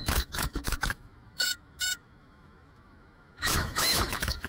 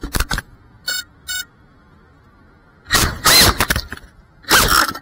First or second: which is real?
second